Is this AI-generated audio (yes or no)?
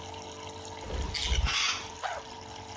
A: no